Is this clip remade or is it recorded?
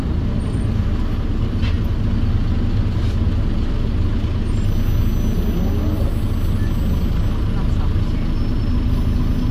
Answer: recorded